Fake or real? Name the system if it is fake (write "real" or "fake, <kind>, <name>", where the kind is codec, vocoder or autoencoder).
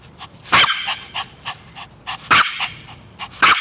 real